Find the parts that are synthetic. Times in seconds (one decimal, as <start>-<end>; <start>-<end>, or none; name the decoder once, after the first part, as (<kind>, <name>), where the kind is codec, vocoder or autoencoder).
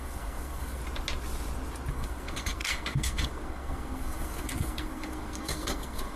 0.0-0.8 (codec, SNAC); 1.9-6.2